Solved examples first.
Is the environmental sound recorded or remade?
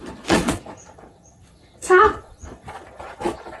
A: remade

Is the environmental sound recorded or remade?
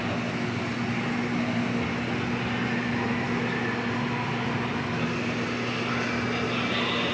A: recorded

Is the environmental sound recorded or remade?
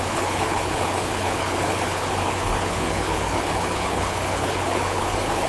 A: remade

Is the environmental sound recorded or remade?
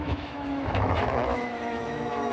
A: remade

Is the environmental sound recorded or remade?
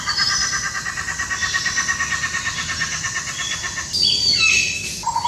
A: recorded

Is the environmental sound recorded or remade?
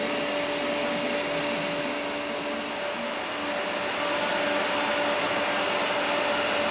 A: recorded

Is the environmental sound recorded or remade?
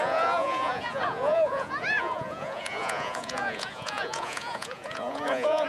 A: remade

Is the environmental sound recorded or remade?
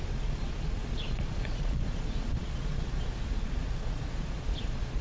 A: remade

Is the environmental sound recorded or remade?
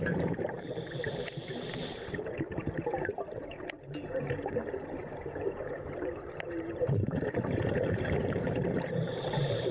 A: remade